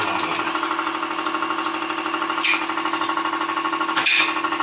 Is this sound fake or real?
real